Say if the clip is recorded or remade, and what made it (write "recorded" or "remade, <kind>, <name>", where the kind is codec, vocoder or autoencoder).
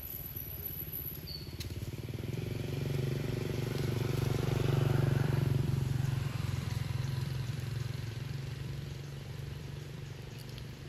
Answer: remade, vocoder, BigVGAN v2